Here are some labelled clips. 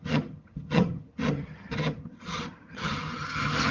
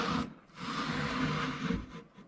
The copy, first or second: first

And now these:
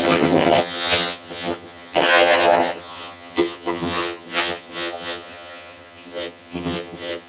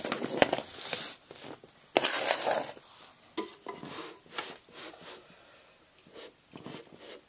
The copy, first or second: first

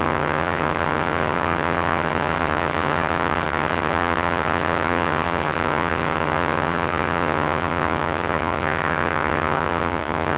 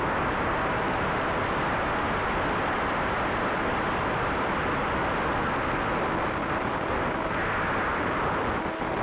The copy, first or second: first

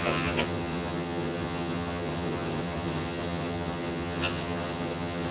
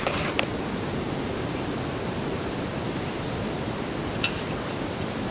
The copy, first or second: first